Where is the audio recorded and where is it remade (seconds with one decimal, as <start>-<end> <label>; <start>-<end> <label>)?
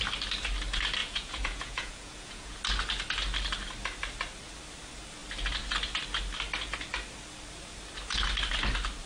0.0-1.0 recorded; 1.0-2.6 remade; 2.6-9.1 recorded